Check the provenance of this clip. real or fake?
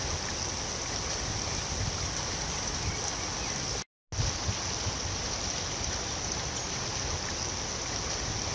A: real